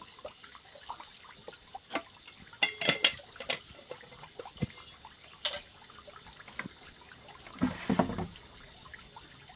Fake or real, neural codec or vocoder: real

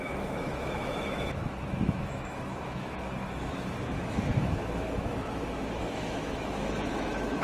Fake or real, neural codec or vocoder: fake, autoencoder, DAC-VAE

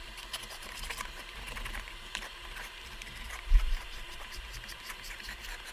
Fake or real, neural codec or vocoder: fake, vocoder, BigVGAN v2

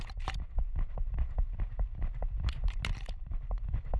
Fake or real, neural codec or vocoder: real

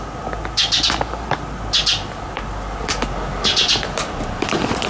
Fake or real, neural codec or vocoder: real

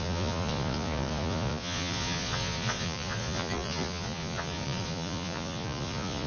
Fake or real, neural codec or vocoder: fake, vocoder, Vocos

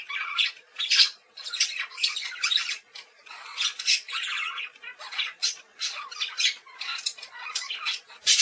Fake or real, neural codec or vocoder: fake, vocoder, Vocos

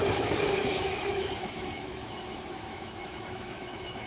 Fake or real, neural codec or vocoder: fake, autoencoder, DAC-VAE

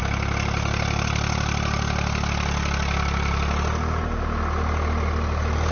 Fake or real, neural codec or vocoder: real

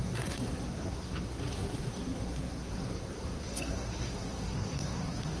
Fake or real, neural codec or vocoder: fake, codec, SNAC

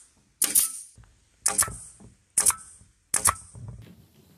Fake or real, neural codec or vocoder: real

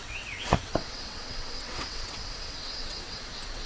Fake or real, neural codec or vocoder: fake, vocoder, WaveNeXt